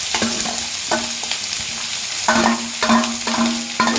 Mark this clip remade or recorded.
recorded